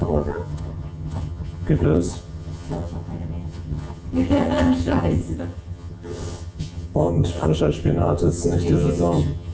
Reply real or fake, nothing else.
fake